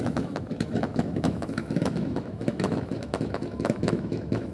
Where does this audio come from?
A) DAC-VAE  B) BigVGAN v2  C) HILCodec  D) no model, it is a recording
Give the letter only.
A